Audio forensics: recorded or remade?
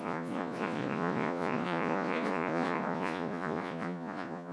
remade